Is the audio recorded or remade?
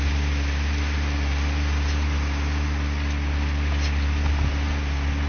recorded